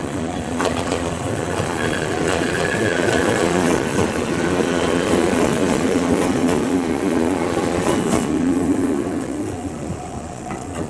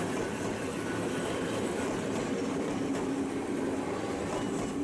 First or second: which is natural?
second